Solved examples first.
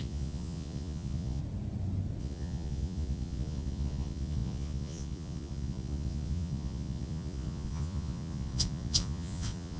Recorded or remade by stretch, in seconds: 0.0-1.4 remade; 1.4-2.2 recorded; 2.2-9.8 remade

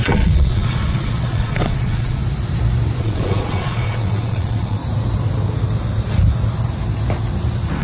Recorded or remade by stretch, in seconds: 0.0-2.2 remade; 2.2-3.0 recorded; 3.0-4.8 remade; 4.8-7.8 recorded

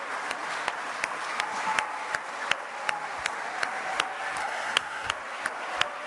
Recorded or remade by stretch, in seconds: 0.0-4.4 recorded; 4.4-5.1 remade; 5.1-6.1 recorded

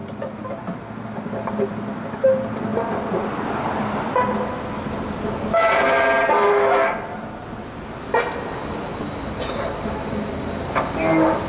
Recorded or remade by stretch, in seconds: 0.0-11.5 recorded

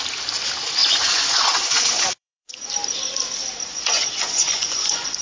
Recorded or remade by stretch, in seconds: 0.0-0.8 recorded; 0.8-2.7 remade; 2.7-3.7 recorded; 3.7-5.2 remade

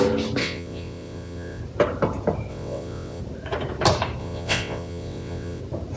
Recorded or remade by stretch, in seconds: 0.0-0.4 recorded; 0.4-1.6 remade; 1.6-2.5 recorded; 2.5-3.2 remade; 3.2-4.2 recorded; 4.2-5.6 remade; 5.6-6.0 recorded

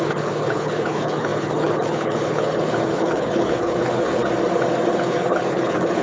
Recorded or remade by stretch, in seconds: 0.0-4.2 remade; 4.2-4.9 recorded; 4.9-6.0 remade